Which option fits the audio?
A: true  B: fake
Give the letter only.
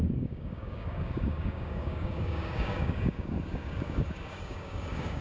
B